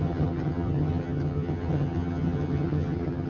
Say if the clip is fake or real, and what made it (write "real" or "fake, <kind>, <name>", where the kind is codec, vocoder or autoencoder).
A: fake, vocoder, HiFi-GAN